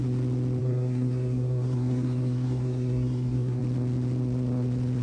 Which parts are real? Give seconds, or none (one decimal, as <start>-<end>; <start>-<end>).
0.0-0.6; 3.6-5.0